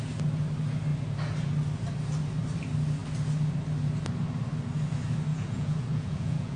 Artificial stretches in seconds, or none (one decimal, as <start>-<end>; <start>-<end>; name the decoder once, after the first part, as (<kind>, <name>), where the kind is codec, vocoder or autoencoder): 5.3-6.6 (vocoder, Vocos)